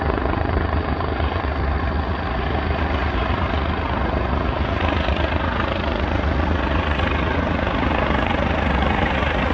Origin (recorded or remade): remade